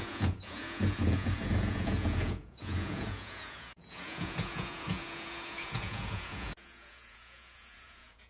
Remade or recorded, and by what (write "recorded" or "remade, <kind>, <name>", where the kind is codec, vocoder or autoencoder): remade, vocoder, Vocos